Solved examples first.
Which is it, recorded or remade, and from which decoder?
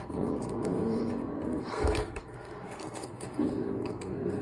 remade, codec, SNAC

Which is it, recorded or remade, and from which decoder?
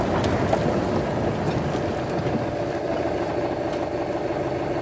recorded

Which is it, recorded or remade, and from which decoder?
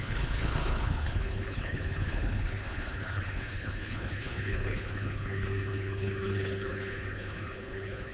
remade, codec, HILCodec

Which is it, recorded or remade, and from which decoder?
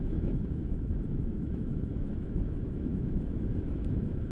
remade, autoencoder, DAC-VAE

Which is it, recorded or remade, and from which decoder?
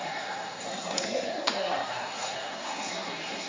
remade, codec, SNAC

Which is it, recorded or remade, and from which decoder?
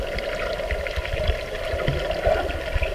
recorded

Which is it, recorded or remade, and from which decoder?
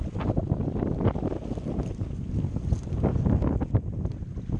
recorded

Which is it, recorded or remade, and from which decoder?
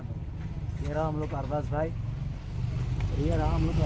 recorded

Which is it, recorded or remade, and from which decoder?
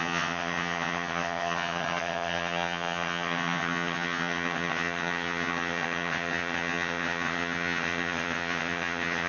remade, vocoder, HiFi-GAN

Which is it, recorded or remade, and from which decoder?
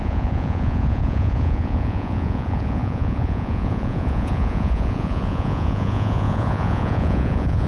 remade, vocoder, Vocos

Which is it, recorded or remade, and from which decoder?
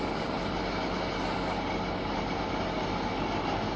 recorded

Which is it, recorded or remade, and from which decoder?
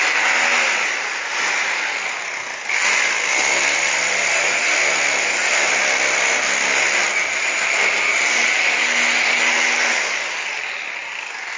recorded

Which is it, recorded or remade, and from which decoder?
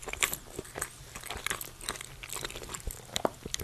recorded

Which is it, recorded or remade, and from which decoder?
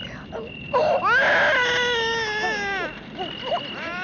recorded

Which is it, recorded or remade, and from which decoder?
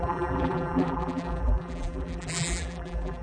remade, vocoder, BigVGAN v2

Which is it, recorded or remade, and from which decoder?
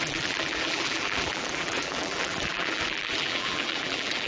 remade, vocoder, BigVGAN v2